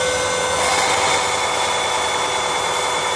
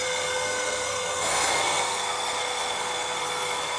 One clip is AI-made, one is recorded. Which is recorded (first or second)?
first